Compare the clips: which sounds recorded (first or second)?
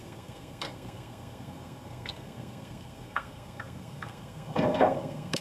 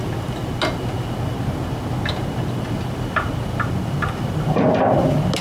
second